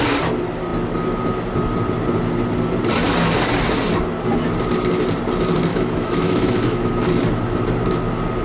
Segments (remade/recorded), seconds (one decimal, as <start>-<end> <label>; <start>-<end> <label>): 0.0-5.7 recorded; 5.7-6.9 remade; 6.9-8.4 recorded